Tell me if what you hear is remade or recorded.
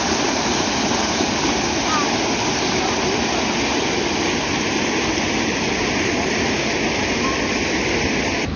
recorded